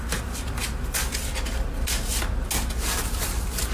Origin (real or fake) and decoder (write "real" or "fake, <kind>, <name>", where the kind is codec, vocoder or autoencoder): real